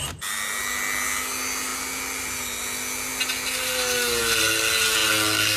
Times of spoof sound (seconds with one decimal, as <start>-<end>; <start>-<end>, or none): none